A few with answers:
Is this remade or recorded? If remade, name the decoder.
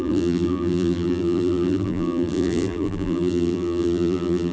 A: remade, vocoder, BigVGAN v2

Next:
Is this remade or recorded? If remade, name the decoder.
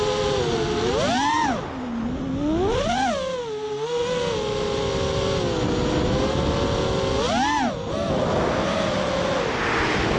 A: recorded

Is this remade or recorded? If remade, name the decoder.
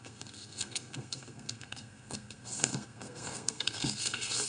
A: remade, codec, SNAC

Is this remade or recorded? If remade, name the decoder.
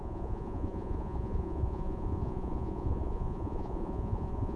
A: remade, vocoder, Vocos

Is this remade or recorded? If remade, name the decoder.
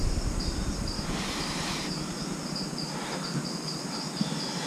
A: recorded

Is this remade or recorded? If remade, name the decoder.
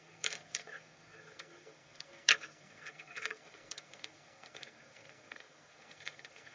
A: remade, codec, SNAC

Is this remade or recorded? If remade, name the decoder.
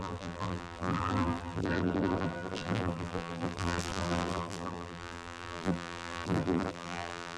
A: remade, vocoder, BigVGAN v2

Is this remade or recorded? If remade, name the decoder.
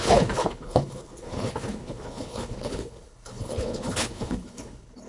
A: remade, codec, HILCodec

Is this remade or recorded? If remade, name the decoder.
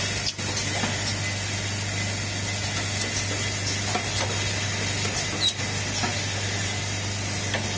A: recorded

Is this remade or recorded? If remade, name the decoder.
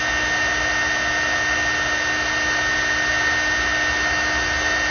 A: recorded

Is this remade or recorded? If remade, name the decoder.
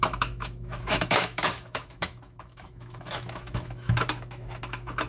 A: remade, autoencoder, DAC-VAE